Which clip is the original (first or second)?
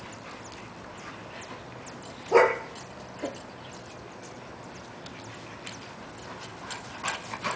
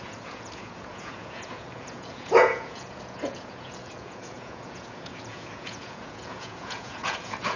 first